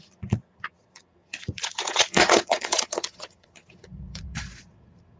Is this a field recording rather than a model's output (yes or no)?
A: no